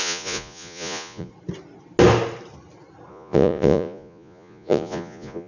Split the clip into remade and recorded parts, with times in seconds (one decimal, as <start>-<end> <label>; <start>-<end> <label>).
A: 0.0-1.3 remade; 1.3-3.1 recorded; 3.1-5.5 remade

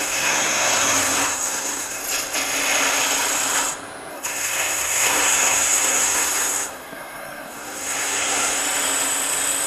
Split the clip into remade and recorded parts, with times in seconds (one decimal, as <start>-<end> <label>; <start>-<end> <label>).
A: 0.0-2.0 remade; 2.0-4.1 recorded; 4.1-8.6 remade; 8.6-9.7 recorded

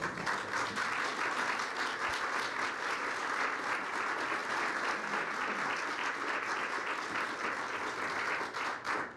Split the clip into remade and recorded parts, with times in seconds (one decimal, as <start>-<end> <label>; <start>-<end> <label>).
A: 0.0-9.2 recorded

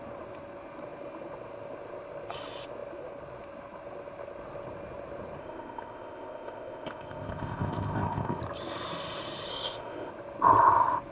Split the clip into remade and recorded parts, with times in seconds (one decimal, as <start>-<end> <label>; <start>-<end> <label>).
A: 0.0-5.4 recorded; 5.4-8.4 remade; 8.4-9.5 recorded; 9.5-10.1 remade; 10.1-11.1 recorded

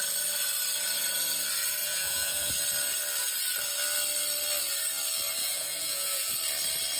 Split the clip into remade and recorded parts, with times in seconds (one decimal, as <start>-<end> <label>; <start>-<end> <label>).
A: 0.0-1.8 recorded; 1.8-2.5 remade; 2.5-5.4 recorded; 5.4-6.3 remade; 6.3-7.0 recorded

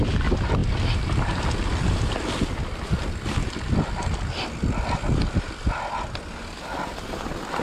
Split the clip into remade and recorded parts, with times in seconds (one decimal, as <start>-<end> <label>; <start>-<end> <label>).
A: 0.0-7.6 recorded